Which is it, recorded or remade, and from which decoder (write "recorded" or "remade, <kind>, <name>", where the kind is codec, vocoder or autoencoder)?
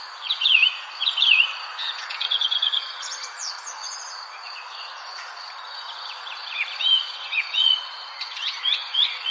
remade, vocoder, Vocos